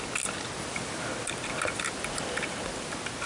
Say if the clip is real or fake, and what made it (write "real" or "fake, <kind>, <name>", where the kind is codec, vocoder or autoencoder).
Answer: real